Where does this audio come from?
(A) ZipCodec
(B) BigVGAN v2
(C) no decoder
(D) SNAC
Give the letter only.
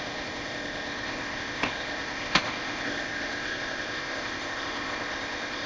A